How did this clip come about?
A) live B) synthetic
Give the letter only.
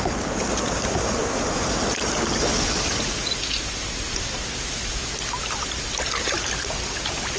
A